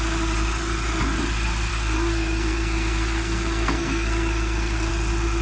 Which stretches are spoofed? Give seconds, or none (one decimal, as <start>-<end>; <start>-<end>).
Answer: 1.7-4.9